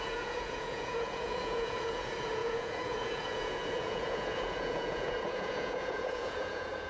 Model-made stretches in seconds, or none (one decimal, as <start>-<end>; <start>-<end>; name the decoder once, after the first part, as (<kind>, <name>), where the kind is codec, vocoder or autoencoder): 0.0-6.9 (vocoder, Vocos)